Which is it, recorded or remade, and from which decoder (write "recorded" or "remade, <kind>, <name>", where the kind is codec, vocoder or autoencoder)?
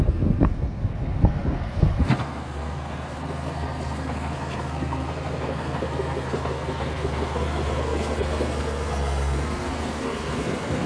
remade, codec, SNAC